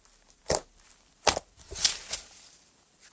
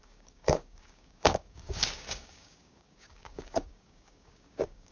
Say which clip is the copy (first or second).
second